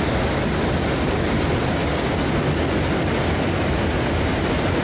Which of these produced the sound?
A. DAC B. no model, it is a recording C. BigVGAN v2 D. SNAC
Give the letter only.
B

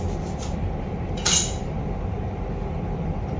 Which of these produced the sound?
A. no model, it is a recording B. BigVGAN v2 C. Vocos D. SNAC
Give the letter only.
B